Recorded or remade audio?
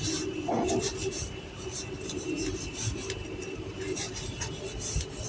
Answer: recorded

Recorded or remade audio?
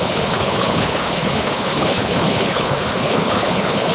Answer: remade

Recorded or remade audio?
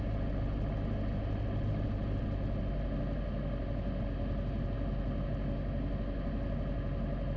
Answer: recorded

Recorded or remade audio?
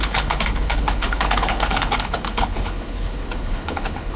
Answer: remade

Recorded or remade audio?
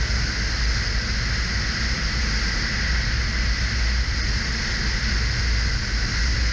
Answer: recorded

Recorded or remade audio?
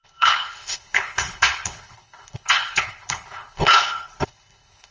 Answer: remade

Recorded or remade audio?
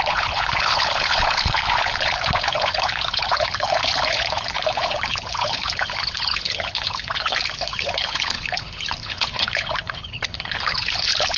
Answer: remade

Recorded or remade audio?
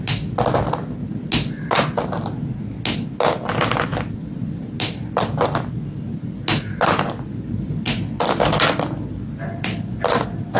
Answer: recorded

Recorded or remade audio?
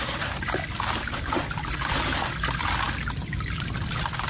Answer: recorded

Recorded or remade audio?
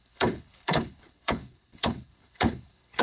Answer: remade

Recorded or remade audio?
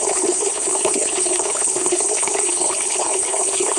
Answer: remade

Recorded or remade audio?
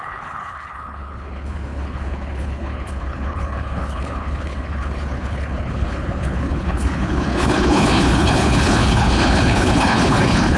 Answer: remade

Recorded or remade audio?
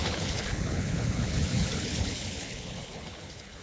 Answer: remade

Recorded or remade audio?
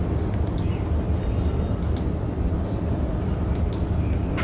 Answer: recorded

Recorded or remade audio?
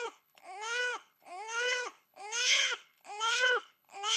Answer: remade